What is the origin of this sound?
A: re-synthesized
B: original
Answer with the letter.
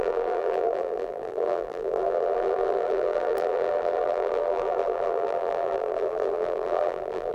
A